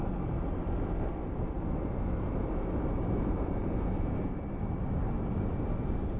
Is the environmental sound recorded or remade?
remade